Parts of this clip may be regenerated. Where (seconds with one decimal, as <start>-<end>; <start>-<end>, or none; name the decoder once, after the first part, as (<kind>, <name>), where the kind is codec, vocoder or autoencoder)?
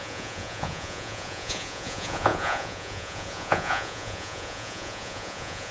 0.0-5.7 (vocoder, Vocos)